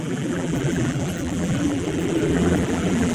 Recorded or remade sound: remade